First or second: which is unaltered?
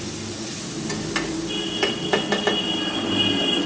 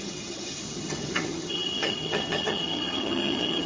first